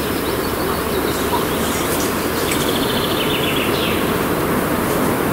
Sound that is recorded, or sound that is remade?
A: remade